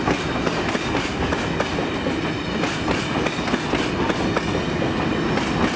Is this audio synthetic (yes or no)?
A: no